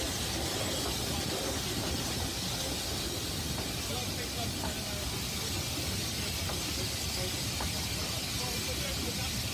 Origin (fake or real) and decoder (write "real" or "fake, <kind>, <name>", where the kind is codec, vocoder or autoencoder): real